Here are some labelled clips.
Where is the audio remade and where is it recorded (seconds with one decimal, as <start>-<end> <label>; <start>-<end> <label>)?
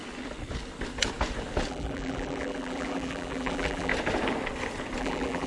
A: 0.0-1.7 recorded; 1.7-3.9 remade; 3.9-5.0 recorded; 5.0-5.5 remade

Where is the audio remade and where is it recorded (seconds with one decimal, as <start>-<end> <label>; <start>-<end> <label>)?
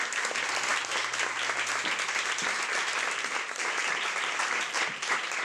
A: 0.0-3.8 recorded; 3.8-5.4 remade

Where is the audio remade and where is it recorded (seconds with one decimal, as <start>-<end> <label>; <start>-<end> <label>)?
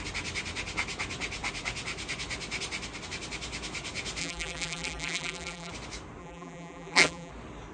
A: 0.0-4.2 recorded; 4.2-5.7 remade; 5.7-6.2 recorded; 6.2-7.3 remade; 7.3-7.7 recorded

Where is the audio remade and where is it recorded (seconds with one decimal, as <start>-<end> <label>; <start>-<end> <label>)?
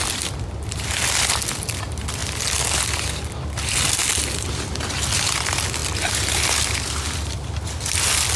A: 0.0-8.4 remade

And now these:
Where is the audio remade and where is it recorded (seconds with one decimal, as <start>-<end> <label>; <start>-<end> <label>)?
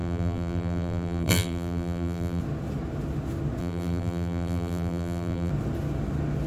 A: 0.0-2.4 remade; 2.4-3.6 recorded; 3.6-5.5 remade; 5.5-6.5 recorded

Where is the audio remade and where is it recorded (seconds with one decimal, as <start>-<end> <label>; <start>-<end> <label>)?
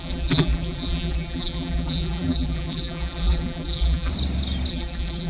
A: 0.0-4.1 remade; 4.1-4.7 recorded; 4.7-5.3 remade